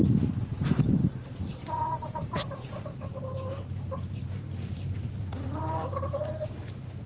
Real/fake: fake